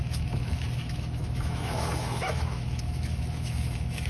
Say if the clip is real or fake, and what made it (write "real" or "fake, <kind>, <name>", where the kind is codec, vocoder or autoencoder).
fake, autoencoder, DAC-VAE